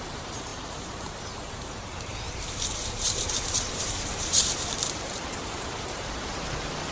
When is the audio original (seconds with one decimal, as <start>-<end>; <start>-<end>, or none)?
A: none